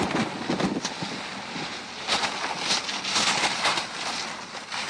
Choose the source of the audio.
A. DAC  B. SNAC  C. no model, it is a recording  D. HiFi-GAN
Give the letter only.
C